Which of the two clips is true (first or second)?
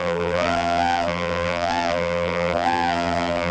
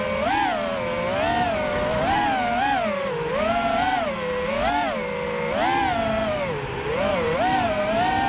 second